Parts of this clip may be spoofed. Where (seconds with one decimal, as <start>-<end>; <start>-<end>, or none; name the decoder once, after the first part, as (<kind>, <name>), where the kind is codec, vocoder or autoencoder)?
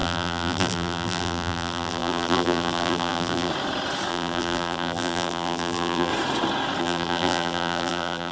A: 0.0-3.5 (vocoder, BigVGAN v2); 4.1-6.1; 6.8-8.3